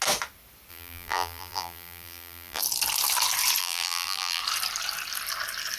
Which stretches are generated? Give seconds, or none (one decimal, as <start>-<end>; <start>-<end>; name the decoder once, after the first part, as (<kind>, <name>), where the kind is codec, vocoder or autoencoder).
0.7-2.6 (vocoder, BigVGAN v2); 3.6-4.4